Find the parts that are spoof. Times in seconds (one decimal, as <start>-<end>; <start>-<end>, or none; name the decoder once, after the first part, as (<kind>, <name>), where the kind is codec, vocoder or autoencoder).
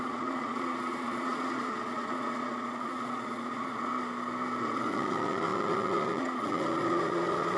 0.0-3.9 (vocoder, Vocos); 4.6-7.6